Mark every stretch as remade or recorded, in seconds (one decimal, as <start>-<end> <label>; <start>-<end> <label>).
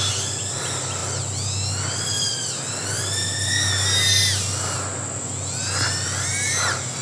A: 0.0-7.0 recorded